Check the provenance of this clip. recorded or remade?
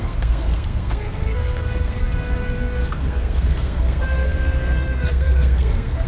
remade